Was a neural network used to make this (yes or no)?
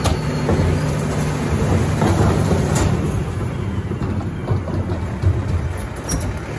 no